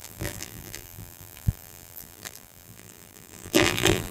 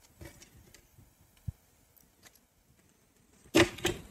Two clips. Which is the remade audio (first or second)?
first